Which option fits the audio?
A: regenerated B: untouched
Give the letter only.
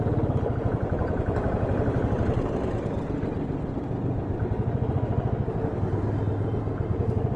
B